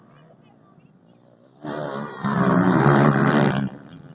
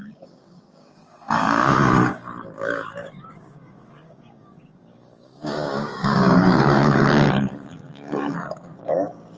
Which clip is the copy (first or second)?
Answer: second